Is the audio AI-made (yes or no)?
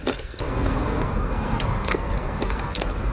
yes